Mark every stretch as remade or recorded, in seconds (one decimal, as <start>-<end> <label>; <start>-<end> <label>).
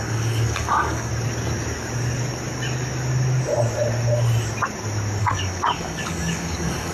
0.0-1.1 remade; 1.1-5.2 recorded; 5.2-6.9 remade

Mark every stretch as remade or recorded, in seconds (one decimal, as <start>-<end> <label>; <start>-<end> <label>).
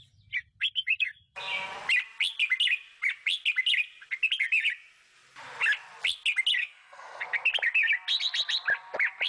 0.0-6.6 recorded; 6.6-7.2 remade; 7.2-9.3 recorded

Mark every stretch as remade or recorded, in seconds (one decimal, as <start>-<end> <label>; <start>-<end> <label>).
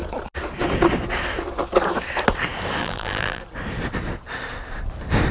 0.0-2.8 recorded; 2.8-3.4 remade; 3.4-5.3 recorded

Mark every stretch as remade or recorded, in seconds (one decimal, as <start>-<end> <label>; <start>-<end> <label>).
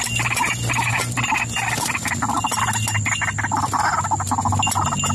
0.0-5.1 recorded